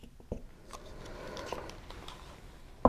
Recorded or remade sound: recorded